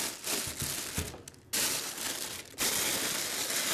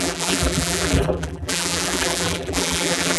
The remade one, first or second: second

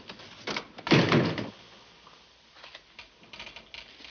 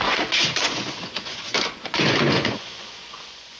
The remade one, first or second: second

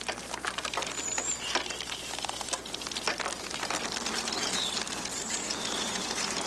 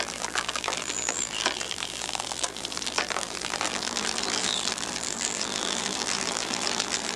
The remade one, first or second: second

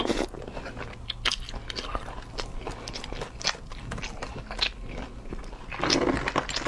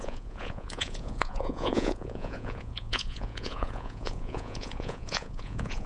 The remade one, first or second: second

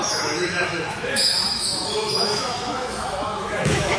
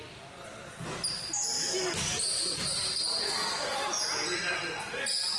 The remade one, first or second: first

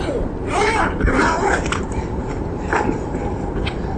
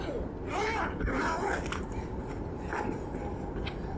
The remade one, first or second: first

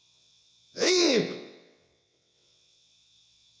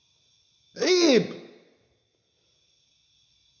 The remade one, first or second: first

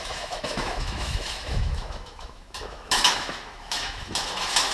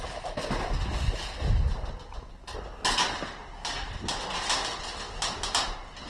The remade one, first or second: first